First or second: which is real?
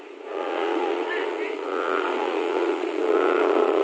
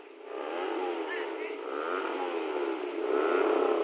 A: second